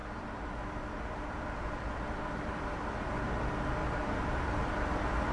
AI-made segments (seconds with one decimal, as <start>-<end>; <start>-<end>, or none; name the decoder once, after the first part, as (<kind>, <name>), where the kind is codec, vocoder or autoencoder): 0.0-3.2 (vocoder, BigVGAN v2); 3.8-4.7